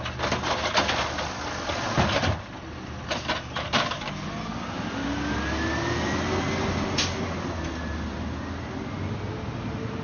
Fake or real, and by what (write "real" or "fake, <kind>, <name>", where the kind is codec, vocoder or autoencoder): real